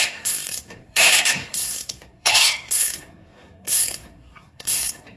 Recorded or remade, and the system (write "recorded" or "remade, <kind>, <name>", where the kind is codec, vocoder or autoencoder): remade, codec, SNAC